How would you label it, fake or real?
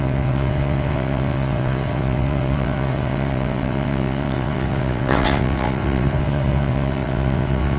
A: fake